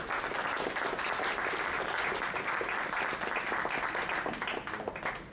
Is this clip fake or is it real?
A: real